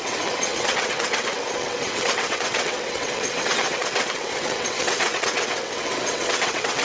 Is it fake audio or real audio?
fake